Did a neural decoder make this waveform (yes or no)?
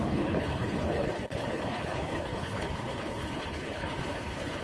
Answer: yes